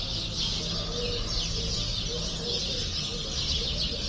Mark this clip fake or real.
real